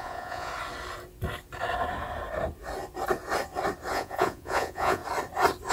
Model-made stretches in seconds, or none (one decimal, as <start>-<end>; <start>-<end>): 0.0-0.5; 3.9-5.0